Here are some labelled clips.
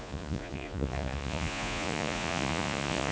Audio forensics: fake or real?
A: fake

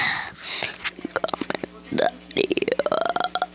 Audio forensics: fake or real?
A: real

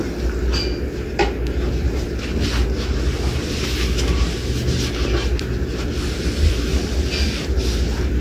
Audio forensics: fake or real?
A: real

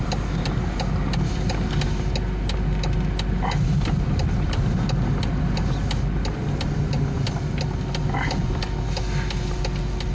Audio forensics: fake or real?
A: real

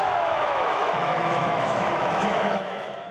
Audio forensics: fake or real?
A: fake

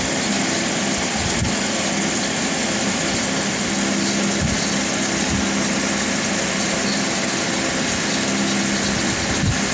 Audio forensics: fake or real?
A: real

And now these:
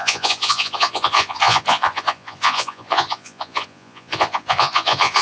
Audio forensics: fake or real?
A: fake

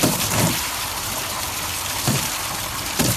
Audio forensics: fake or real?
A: fake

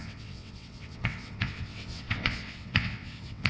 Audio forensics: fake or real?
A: fake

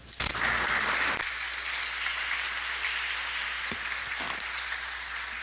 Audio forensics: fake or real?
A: real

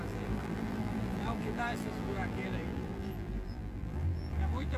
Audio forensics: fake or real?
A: fake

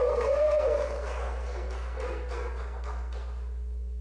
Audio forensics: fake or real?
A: fake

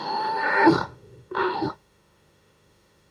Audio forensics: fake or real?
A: fake